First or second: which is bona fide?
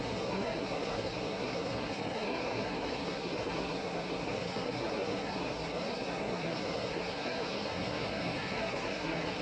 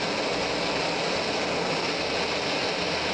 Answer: second